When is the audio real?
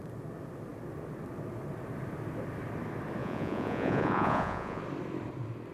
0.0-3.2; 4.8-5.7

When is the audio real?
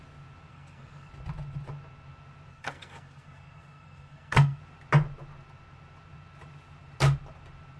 0.0-0.5; 1.1-2.5; 4.6-7.8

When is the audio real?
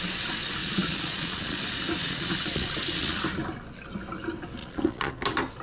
0.0-0.6; 1.6-2.0; 3.2-4.6; 5.1-5.6